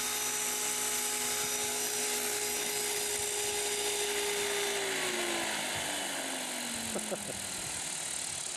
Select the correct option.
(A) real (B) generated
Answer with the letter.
A